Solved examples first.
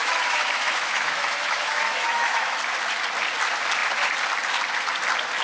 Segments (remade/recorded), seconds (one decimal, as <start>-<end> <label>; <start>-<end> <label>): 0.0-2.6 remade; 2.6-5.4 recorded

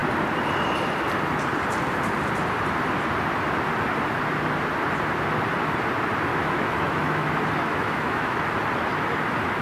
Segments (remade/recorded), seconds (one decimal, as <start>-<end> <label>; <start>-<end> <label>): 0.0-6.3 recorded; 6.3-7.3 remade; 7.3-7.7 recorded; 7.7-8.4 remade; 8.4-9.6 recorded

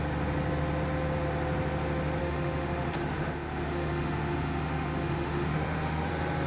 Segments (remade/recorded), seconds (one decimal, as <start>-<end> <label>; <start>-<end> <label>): 0.0-2.2 recorded; 2.2-6.1 remade; 6.1-6.5 recorded